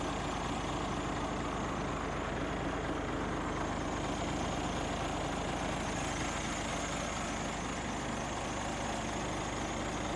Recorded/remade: recorded